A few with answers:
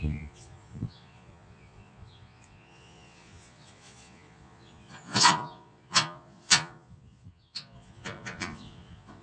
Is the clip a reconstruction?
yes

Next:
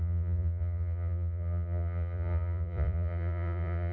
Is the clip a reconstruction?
yes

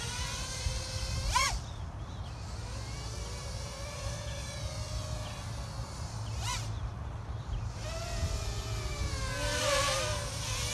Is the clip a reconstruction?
no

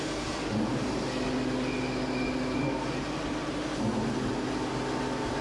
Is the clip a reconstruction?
no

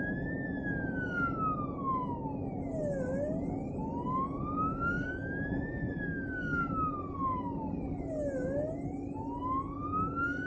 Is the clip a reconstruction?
no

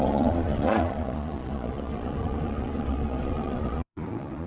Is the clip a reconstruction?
yes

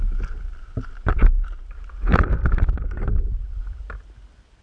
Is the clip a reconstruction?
no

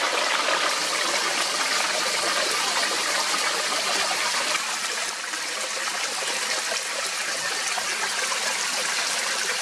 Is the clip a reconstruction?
no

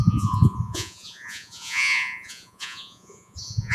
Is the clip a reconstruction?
yes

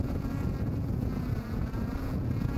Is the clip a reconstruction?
yes